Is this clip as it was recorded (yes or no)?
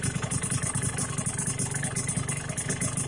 yes